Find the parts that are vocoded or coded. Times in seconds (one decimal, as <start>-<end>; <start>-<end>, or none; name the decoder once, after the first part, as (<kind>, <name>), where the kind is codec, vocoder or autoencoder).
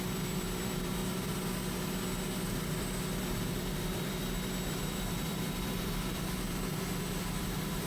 0.0-1.0 (vocoder, BigVGAN v2); 2.4-7.9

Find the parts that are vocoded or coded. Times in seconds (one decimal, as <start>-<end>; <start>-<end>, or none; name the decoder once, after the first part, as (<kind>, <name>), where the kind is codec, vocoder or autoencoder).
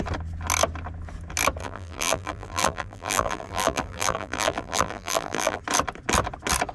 1.6-5.6 (vocoder, BigVGAN v2)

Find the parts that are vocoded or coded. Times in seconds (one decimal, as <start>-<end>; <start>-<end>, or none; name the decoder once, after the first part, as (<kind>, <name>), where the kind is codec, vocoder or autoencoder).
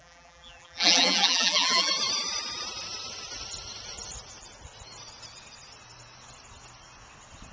0.0-1.9 (vocoder, BigVGAN v2)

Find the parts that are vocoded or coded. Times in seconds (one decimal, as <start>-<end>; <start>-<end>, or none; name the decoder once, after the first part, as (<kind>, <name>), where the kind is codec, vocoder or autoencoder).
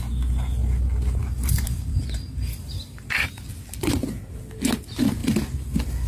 1.2-3.5 (vocoder, BigVGAN v2); 5.2-6.1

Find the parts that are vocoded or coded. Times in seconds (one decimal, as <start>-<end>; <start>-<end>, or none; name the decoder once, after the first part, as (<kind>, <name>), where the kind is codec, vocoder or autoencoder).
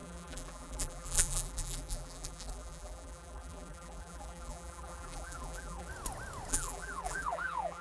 0.0-5.9 (vocoder, BigVGAN v2); 6.5-7.8